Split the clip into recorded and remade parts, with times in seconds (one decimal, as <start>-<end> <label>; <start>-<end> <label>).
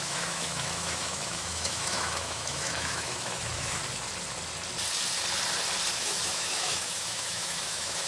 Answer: 0.0-3.8 remade; 3.8-5.9 recorded; 5.9-8.1 remade